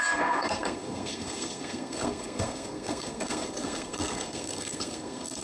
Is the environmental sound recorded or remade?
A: remade